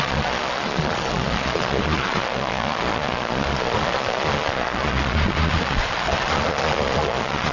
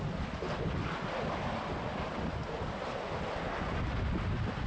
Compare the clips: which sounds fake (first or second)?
first